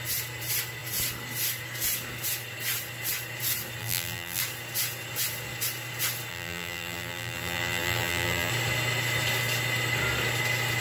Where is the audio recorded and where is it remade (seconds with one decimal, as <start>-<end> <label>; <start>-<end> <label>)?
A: 0.0-3.8 recorded; 3.8-4.4 remade; 4.4-6.3 recorded; 6.3-8.5 remade; 8.5-10.8 recorded